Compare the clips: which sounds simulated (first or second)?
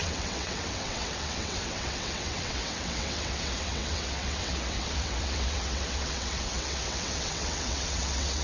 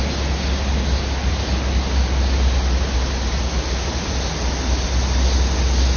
first